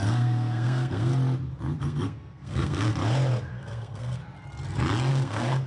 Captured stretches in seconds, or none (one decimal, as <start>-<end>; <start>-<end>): 1.1-1.8; 2.9-3.5; 4.2-5.1